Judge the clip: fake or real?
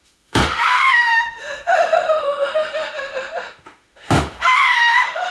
fake